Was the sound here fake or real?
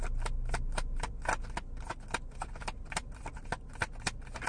real